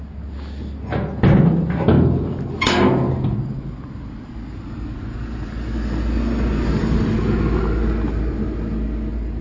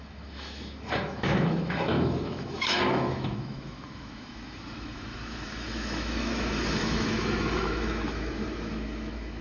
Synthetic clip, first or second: second